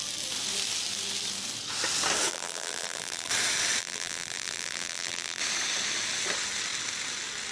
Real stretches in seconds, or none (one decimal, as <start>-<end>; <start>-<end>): 0.0-2.3; 3.3-3.8; 5.4-7.5